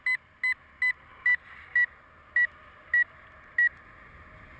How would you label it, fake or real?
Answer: real